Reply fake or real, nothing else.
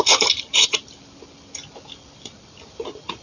real